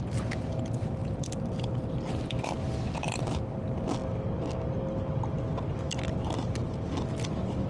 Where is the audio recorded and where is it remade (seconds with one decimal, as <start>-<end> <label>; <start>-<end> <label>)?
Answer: 0.0-1.0 recorded; 1.0-1.9 remade; 1.9-7.7 recorded